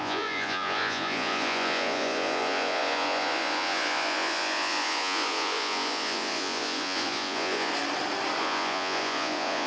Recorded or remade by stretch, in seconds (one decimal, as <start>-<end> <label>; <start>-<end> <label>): 0.0-7.7 remade; 7.7-8.4 recorded; 8.4-9.7 remade